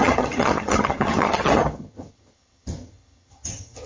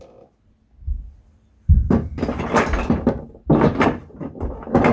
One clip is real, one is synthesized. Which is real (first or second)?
second